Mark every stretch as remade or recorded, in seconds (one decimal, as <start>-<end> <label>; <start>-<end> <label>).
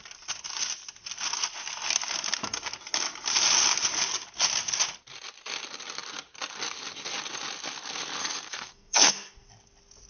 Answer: 0.0-8.2 recorded; 8.2-9.5 remade; 9.5-10.1 recorded